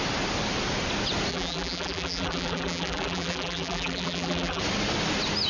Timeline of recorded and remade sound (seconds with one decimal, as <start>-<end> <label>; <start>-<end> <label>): 0.0-1.3 recorded; 1.3-4.6 remade; 4.6-5.5 recorded